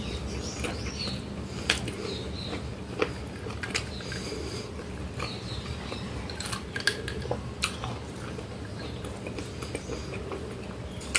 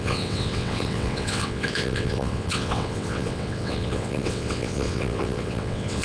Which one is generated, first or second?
second